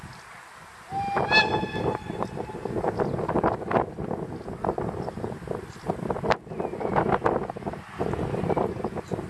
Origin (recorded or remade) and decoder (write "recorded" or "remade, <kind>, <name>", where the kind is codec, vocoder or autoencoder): recorded